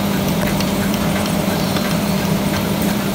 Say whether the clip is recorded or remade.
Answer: remade